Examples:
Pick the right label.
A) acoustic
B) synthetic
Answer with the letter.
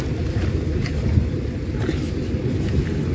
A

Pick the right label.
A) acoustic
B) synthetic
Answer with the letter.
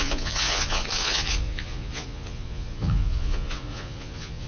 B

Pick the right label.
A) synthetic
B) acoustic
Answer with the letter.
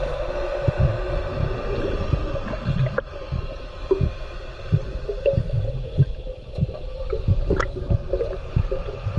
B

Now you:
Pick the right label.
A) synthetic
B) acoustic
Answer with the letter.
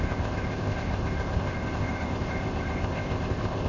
A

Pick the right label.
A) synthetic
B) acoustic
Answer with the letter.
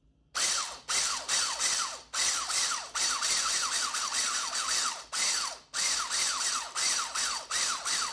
B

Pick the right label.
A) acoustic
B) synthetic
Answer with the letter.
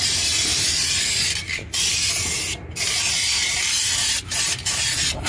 A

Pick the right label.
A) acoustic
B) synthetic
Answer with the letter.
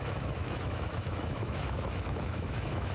B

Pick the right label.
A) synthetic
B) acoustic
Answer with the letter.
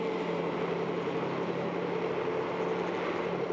B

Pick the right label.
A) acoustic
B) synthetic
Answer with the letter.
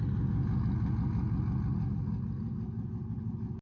A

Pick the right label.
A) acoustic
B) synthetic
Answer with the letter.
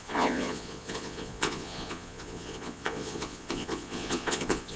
B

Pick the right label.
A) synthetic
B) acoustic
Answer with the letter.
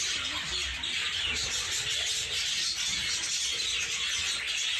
B